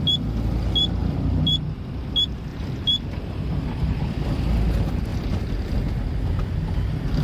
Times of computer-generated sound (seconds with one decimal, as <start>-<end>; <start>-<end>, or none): 1.0-2.1; 2.5-4.4